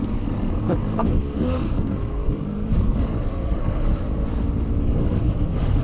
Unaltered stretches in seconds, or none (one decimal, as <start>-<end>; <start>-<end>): 3.9-4.8